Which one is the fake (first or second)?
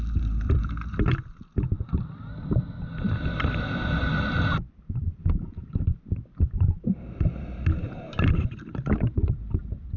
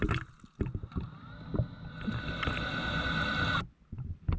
first